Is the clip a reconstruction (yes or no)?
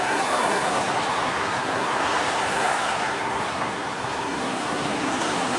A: yes